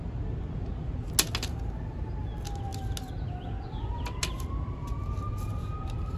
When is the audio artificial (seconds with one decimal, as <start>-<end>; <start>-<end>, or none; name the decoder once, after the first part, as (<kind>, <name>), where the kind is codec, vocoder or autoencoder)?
none